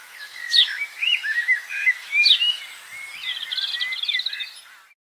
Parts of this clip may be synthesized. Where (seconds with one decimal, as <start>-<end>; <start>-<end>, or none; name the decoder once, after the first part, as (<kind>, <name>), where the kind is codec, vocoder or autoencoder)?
0.0-2.6 (autoencoder, DAC-VAE)